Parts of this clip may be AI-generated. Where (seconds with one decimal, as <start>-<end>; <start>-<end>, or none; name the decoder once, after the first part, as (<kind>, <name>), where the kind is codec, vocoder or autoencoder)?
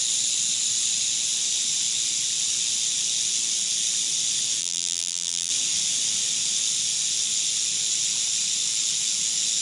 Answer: 4.6-5.5 (vocoder, BigVGAN v2)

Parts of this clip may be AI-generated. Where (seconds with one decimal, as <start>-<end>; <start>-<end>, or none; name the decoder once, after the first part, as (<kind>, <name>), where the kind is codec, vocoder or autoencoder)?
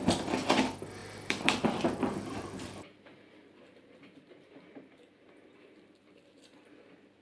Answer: 1.0-5.3 (vocoder, BigVGAN v2)